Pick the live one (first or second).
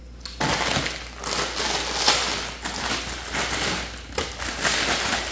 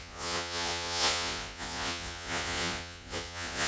first